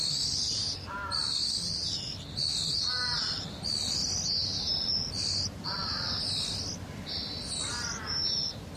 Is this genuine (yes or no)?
yes